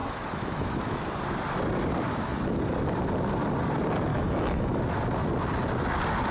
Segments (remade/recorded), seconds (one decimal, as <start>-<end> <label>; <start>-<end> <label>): 0.0-1.1 remade; 1.1-4.1 recorded; 4.1-4.8 remade; 4.8-6.3 recorded